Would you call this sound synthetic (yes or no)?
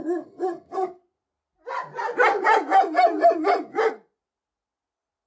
no